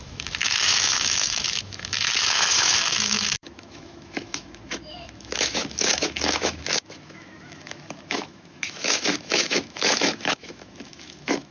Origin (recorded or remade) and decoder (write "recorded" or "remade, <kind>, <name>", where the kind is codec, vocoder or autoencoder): remade, autoencoder, DAC-VAE